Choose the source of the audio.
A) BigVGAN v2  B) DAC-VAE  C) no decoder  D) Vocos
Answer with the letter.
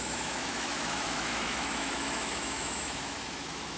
B